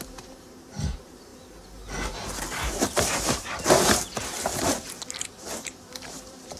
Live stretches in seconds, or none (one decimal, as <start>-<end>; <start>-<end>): 1.3-2.7; 4.5-5.2